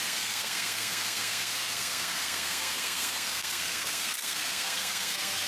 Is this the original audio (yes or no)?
no